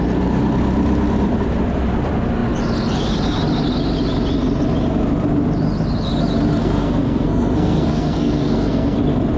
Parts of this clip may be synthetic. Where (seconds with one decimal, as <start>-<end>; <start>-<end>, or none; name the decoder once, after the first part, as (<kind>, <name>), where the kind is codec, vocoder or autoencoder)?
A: 6.6-9.0 (codec, SNAC)